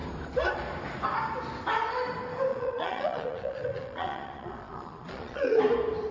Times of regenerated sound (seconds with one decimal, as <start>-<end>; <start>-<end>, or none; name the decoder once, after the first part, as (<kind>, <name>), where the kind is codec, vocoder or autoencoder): 2.5-5.6 (vocoder, Vocos)